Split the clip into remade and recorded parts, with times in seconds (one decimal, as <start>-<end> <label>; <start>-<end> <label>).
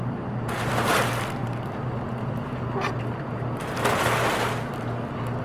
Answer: 0.0-0.7 remade; 0.7-1.4 recorded; 1.4-4.3 remade; 4.3-5.4 recorded